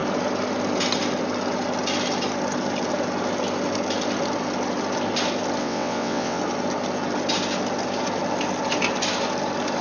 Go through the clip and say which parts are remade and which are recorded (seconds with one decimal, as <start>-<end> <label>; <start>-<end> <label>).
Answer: 0.0-5.6 recorded; 5.6-6.4 remade; 6.4-9.8 recorded